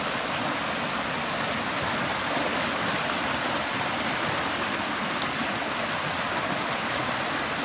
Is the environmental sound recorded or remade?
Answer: recorded